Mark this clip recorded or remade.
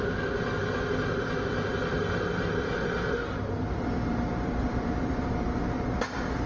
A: recorded